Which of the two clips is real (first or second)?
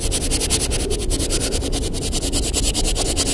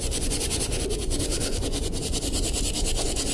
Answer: first